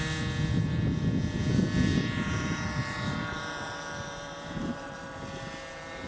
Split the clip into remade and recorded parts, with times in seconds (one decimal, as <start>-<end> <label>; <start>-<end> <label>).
0.0-1.9 recorded; 1.9-5.2 remade; 5.2-6.1 recorded